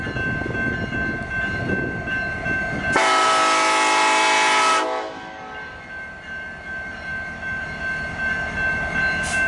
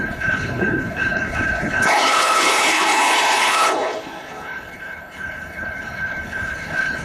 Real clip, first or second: first